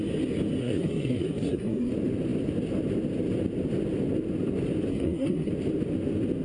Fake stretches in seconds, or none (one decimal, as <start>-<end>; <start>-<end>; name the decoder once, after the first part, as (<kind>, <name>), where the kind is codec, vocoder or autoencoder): 0.6-1.9 (codec, SNAC); 4.9-5.5